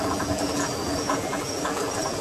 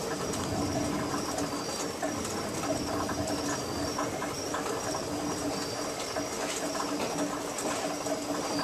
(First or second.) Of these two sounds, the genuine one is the second